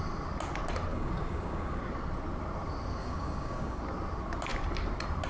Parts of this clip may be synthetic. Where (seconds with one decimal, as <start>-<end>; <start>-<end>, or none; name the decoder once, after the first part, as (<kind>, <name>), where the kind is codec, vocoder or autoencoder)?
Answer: 0.9-1.8 (codec, DAC); 3.0-3.8